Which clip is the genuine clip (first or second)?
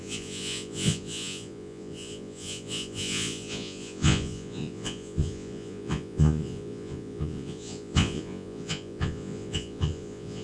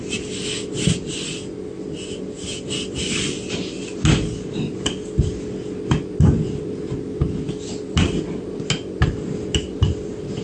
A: second